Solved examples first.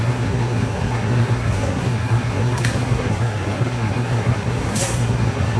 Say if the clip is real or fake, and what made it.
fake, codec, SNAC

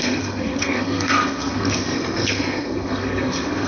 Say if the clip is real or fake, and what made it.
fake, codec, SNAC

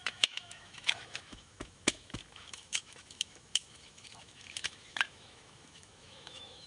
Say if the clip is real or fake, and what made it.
fake, autoencoder, DAC-VAE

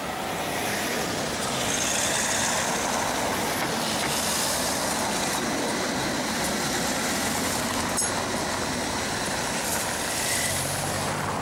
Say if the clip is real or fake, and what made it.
real